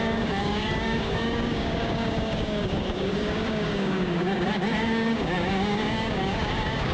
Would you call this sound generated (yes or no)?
yes